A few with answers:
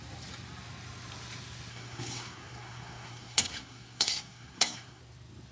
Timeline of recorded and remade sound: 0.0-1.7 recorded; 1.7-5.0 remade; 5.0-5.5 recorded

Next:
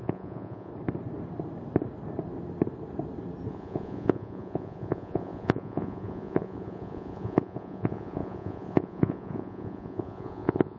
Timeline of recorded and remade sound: 0.0-0.7 remade; 0.7-3.5 recorded; 3.5-10.8 remade

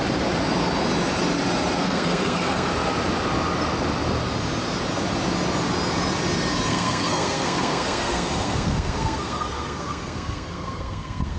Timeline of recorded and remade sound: 0.0-1.8 recorded; 1.8-2.7 remade; 2.7-6.7 recorded; 6.7-11.4 remade

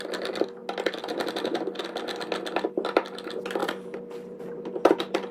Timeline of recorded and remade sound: 0.0-3.6 recorded; 3.6-5.3 remade

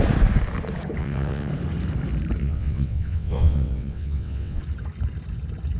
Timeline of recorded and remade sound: 0.0-1.0 recorded; 1.0-1.5 remade; 1.5-2.4 recorded; 2.4-4.6 remade; 4.6-5.8 recorded

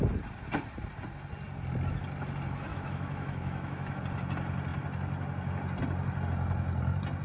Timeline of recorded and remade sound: 0.0-2.7 recorded; 2.7-4.0 remade; 4.0-7.2 recorded

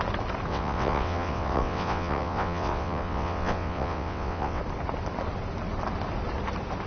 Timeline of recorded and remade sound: 0.0-0.5 recorded; 0.5-4.6 remade; 4.6-6.9 recorded

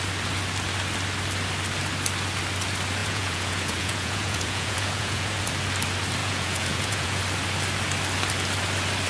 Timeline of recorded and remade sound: 0.0-3.0 recorded; 3.0-5.5 remade; 5.5-6.2 recorded; 6.2-7.2 remade; 7.2-9.1 recorded